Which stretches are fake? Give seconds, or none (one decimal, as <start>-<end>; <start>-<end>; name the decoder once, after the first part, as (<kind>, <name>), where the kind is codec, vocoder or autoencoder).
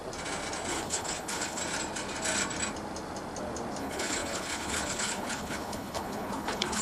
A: 0.7-1.6 (codec, HILCodec); 3.8-6.8